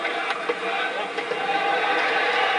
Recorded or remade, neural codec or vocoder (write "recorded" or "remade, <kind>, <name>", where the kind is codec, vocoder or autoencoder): remade, vocoder, BigVGAN v2